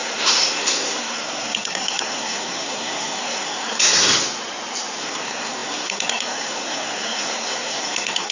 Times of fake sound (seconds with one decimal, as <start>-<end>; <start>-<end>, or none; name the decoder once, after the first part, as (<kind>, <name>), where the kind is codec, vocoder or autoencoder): 0.0-4.1 (codec, SNAC); 5.0-8.3